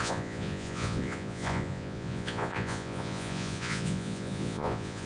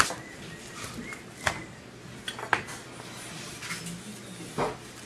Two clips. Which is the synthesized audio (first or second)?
first